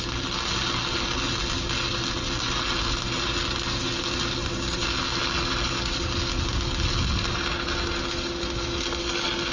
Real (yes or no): yes